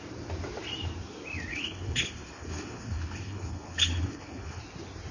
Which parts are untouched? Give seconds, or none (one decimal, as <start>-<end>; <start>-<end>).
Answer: 0.0-1.5; 4.6-5.1